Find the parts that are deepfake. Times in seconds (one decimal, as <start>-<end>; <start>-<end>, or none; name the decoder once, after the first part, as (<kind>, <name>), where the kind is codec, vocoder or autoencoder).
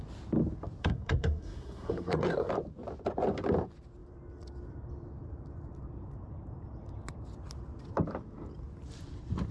0.8-2.5 (codec, SNAC)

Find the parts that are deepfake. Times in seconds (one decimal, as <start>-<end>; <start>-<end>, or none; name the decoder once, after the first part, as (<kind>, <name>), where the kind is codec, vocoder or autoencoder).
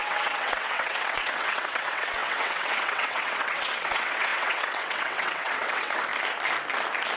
0.0-6.1 (vocoder, WaveNeXt)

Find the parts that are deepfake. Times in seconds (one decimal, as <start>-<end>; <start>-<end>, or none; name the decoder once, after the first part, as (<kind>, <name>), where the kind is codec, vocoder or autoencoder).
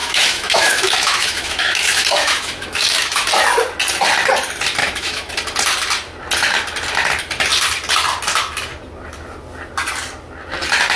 0.0-3.3 (autoencoder, DAC-VAE); 4.8-5.3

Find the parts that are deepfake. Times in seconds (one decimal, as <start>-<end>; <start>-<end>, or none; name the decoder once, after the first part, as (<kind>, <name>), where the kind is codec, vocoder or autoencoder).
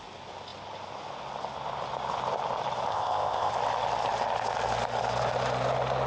2.9-3.5 (codec, ZipCodec)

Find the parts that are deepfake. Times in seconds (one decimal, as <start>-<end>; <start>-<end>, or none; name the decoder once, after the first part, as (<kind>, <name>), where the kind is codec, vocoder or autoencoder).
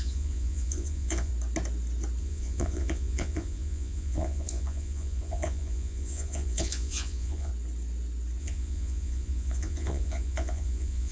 0.0-1.3 (vocoder, Vocos); 2.2-7.5; 8.4-11.1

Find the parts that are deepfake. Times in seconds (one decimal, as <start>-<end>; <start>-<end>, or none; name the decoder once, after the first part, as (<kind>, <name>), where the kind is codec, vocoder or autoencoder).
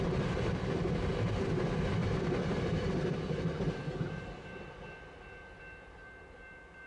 2.0-4.4 (vocoder, BigVGAN v2)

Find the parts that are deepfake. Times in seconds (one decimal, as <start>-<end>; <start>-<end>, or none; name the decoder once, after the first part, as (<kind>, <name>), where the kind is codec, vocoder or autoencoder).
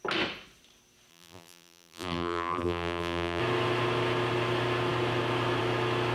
1.1-3.4 (vocoder, BigVGAN v2)